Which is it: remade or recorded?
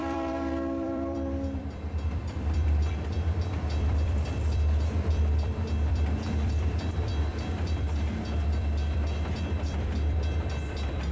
remade